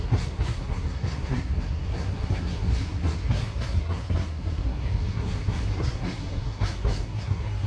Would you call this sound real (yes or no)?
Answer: no